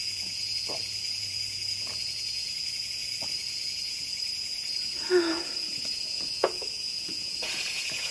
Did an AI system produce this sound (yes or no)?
yes